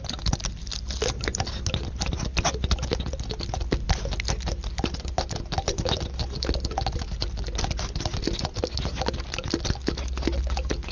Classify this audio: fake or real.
real